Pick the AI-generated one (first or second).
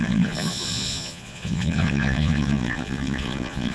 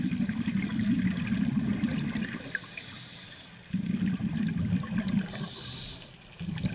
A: first